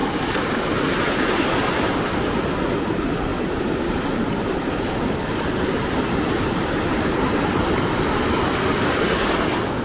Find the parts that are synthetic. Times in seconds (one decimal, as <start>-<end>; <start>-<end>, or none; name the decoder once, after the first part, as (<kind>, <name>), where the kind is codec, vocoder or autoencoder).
0.0-2.1 (vocoder, BigVGAN v2); 3.3-7.5